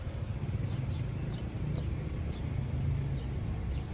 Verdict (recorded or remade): recorded